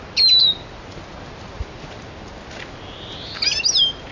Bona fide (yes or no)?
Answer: yes